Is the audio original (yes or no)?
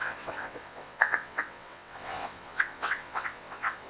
no